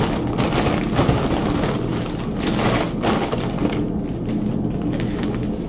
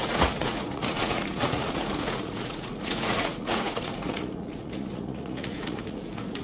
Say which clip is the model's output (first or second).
second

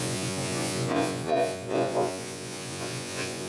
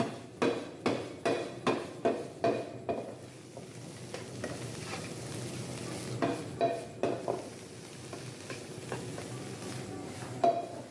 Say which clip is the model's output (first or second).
first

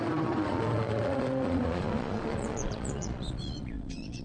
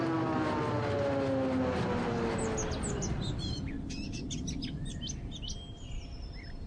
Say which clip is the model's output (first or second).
first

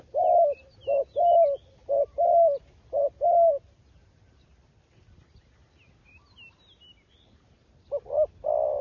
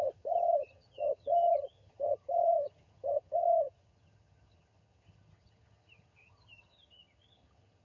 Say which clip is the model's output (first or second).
second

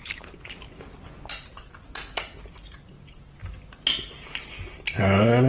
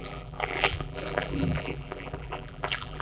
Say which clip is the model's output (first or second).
second